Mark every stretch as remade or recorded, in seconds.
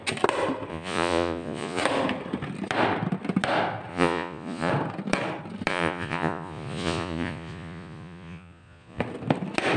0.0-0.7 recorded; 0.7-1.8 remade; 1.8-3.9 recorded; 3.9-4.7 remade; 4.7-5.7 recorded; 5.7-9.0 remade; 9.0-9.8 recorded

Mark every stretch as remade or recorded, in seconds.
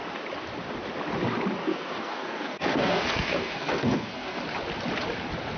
0.0-1.6 recorded; 1.6-4.4 remade; 4.4-5.6 recorded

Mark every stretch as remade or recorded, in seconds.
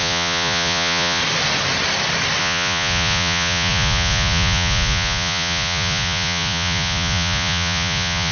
0.0-1.2 remade; 1.2-2.4 recorded; 2.4-8.3 remade